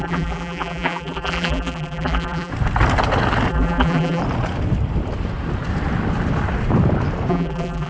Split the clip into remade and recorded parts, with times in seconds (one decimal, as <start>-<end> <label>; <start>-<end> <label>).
0.0-2.5 remade; 2.5-3.5 recorded; 3.5-4.2 remade; 4.2-7.3 recorded; 7.3-7.9 remade